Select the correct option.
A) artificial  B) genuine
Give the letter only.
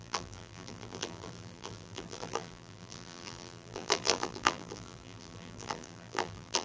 A